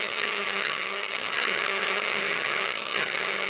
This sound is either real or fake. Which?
fake